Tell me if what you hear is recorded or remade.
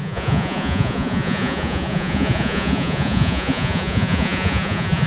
remade